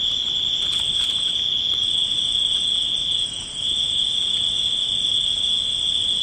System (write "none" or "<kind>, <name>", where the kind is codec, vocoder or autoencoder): none